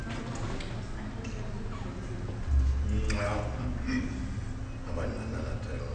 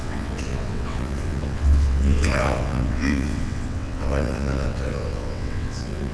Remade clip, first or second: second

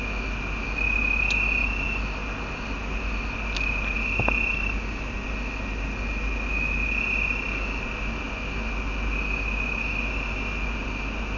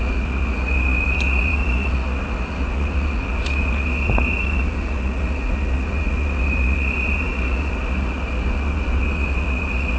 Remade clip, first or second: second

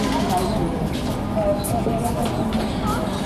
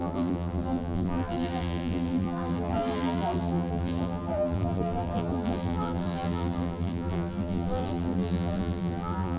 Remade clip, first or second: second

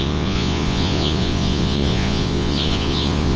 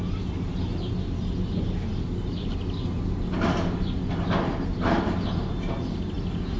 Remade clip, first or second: first